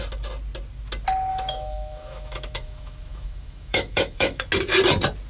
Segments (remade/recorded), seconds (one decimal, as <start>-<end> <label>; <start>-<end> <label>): 0.0-1.3 recorded; 1.3-4.5 remade; 4.5-5.3 recorded